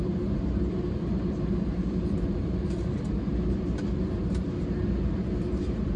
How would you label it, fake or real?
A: fake